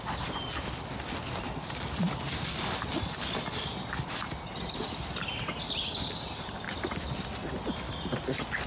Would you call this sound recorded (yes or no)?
yes